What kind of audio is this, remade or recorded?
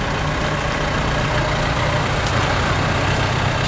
recorded